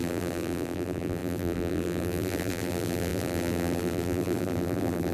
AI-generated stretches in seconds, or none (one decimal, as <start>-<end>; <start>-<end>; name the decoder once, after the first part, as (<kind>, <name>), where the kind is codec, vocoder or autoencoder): 0.0-5.1 (vocoder, BigVGAN v2)